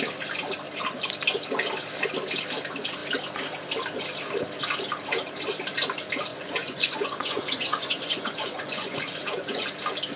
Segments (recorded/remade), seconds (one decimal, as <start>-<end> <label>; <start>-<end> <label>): 0.0-6.3 recorded; 6.3-9.7 remade; 9.7-10.2 recorded